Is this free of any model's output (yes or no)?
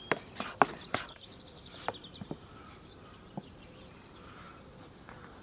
yes